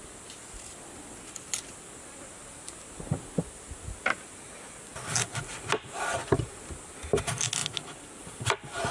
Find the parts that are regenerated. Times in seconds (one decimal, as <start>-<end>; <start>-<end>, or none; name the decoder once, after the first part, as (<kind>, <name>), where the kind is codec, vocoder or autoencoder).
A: none